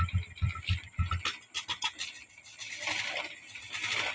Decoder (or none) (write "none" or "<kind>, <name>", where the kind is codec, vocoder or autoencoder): none